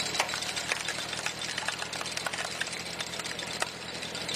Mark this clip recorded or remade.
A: recorded